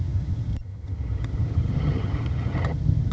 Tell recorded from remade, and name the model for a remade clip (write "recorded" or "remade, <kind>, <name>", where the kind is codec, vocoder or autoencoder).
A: remade, vocoder, HiFi-GAN